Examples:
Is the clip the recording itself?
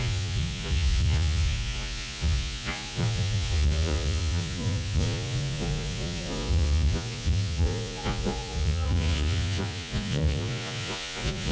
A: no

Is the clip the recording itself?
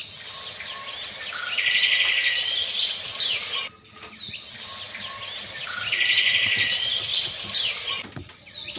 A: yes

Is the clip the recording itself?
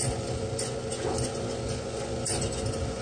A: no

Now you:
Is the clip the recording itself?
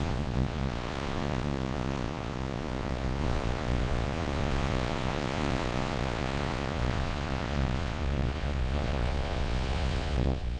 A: no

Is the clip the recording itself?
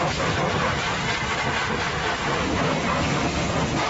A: yes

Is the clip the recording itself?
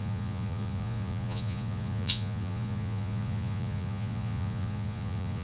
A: no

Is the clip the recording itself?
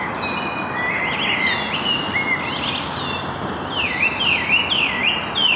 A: yes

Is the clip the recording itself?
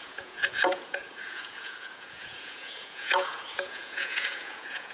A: no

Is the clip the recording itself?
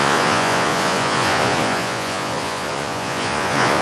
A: no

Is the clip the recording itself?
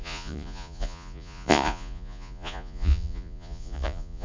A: no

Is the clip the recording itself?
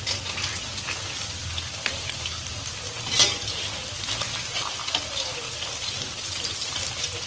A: yes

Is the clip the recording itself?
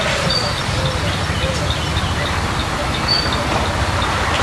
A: yes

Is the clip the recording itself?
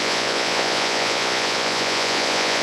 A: no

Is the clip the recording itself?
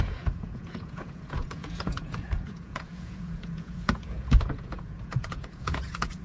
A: no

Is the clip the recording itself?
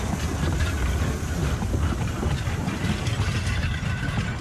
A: yes